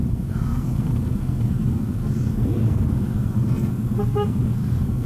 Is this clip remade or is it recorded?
remade